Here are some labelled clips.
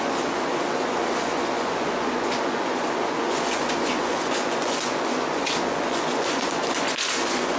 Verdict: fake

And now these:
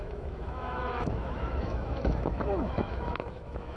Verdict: fake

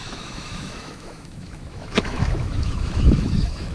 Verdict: fake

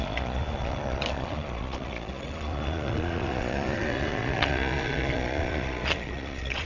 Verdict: fake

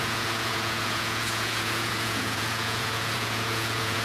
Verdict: fake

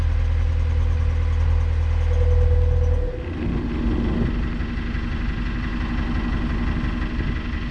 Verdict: real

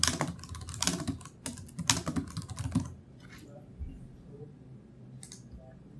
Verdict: real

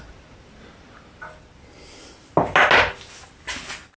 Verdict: real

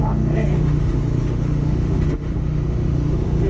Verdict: fake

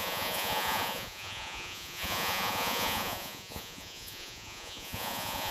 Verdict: fake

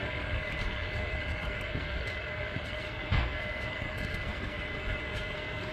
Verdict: fake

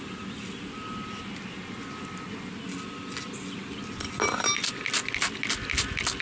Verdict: real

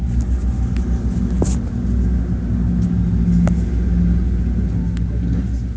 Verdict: real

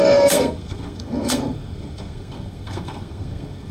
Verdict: fake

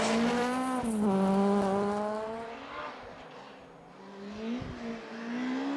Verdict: real